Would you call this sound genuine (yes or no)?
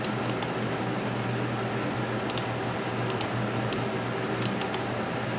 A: yes